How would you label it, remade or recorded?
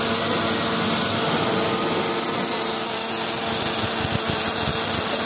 recorded